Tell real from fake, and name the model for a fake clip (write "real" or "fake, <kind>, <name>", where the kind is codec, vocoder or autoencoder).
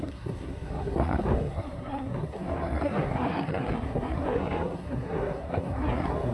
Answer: fake, codec, SNAC